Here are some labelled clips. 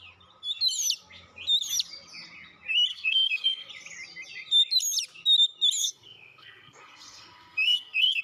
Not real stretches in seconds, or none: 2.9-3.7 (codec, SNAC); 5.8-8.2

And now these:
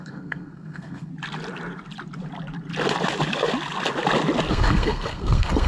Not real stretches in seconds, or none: 0.0-1.1 (codec, SNAC); 4.5-5.7

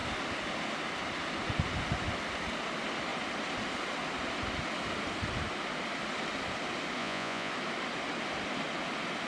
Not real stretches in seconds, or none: 7.0-7.5 (vocoder, Vocos)

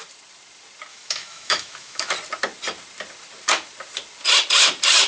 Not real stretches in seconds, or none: 0.9-2.1 (autoencoder, DAC-VAE)